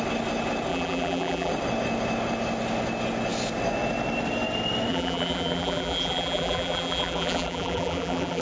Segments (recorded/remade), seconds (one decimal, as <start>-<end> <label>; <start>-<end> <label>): 0.0-0.7 recorded; 0.7-1.5 remade; 1.5-4.9 recorded; 4.9-8.4 remade